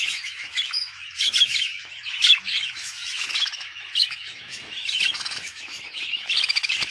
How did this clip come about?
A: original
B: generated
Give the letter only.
B